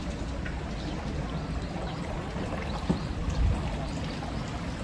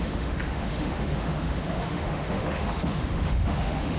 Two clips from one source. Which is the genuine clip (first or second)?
first